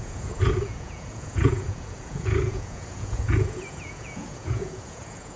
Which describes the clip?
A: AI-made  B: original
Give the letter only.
A